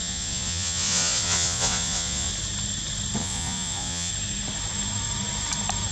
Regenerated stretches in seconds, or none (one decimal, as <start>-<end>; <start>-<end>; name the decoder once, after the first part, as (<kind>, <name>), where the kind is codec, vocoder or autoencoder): 0.0-2.3 (vocoder, Vocos); 3.2-4.1

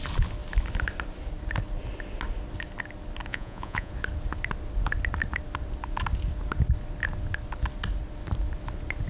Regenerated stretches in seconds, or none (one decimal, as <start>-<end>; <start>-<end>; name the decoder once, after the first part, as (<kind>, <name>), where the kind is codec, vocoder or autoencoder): 3.3-3.9 (vocoder, Vocos)

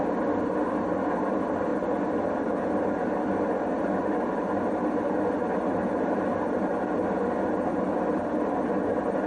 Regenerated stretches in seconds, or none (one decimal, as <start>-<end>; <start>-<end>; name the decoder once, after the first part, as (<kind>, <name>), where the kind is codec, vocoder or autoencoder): none

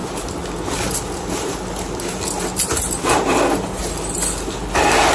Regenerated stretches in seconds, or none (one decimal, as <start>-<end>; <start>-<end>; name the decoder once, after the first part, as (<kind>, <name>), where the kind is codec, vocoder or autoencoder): none

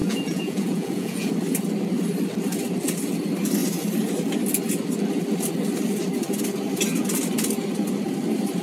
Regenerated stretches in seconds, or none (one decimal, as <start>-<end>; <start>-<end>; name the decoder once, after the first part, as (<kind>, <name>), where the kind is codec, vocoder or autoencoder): 0.0-1.3 (vocoder, Vocos)

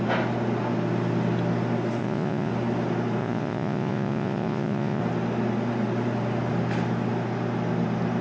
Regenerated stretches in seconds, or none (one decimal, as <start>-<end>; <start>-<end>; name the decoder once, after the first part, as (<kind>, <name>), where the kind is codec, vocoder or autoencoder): 2.0-2.5 (vocoder, Vocos); 3.2-5.0

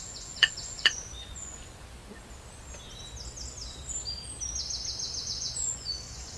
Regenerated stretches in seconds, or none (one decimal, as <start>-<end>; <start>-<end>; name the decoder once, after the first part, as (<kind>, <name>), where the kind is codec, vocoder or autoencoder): 0.0-2.0 (vocoder, Vocos); 5.2-6.4

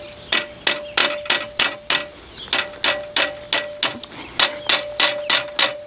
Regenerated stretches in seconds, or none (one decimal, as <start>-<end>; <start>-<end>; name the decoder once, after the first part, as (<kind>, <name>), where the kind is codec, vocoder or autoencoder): none